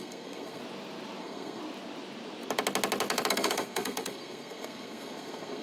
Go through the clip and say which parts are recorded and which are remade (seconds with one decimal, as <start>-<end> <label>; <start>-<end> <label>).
0.0-0.6 remade; 0.6-1.2 recorded; 1.2-1.6 remade; 1.6-3.3 recorded; 3.3-5.6 remade